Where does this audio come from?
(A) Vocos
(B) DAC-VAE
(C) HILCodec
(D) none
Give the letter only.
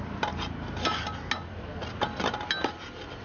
D